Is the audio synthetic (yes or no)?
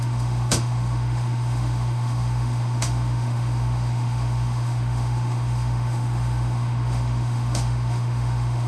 yes